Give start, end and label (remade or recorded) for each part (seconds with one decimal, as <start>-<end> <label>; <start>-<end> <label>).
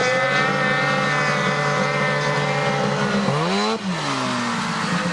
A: 0.0-5.1 recorded